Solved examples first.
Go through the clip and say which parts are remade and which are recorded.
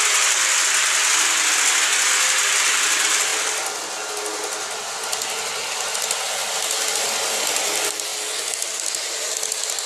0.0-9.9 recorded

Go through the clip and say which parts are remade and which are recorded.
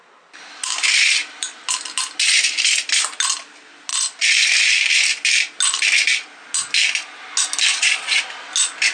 0.0-7.7 recorded; 7.7-8.2 remade; 8.2-8.9 recorded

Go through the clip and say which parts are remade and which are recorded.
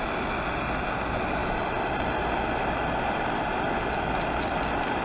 0.0-5.0 recorded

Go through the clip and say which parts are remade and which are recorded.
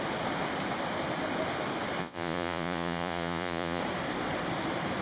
0.0-2.0 recorded; 2.0-3.8 remade; 3.8-5.0 recorded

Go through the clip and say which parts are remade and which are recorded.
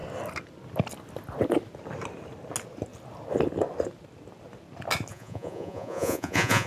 0.0-5.1 recorded; 5.1-6.7 remade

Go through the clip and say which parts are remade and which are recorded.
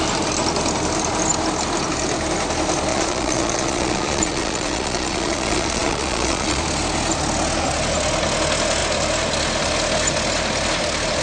0.0-2.9 recorded; 2.9-6.6 remade; 6.6-11.2 recorded